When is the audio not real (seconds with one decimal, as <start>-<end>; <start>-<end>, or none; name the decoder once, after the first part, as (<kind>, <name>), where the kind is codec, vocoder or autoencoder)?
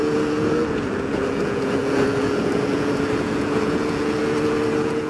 0.0-5.1 (vocoder, Vocos)